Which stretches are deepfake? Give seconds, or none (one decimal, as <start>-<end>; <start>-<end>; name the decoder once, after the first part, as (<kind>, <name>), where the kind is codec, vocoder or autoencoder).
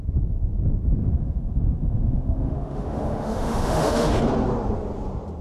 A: 1.0-4.2 (autoencoder, DAC-VAE)